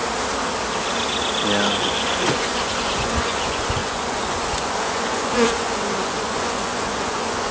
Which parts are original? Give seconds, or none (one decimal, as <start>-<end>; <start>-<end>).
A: 0.0-1.7